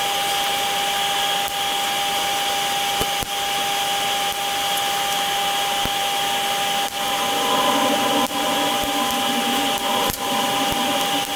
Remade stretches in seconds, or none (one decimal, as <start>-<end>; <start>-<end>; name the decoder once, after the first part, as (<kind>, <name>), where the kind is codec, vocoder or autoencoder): none